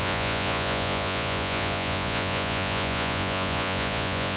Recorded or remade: remade